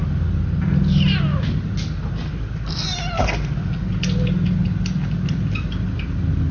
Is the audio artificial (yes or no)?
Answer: no